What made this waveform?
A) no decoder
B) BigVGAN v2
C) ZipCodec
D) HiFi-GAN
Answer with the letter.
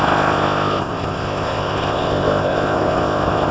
C